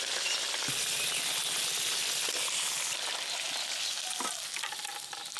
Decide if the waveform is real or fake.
real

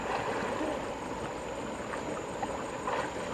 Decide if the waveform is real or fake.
real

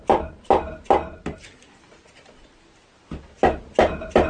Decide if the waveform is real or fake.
real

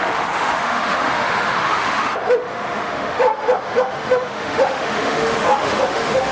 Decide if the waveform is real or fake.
fake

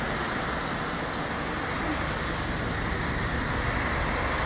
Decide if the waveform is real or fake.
real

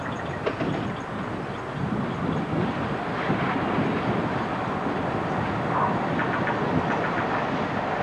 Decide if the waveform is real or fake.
real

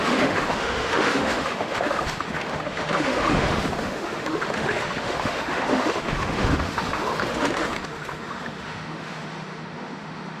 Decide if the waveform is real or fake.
fake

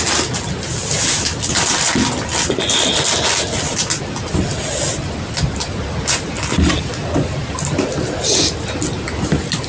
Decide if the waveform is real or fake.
real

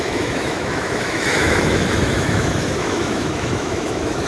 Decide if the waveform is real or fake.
fake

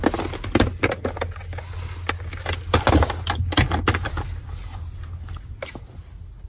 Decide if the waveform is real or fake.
real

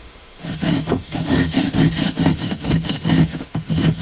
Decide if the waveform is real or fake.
fake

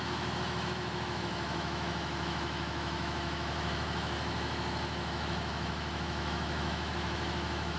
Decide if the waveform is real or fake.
fake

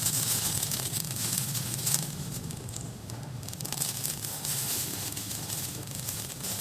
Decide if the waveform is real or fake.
fake